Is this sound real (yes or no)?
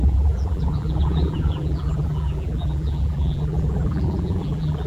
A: no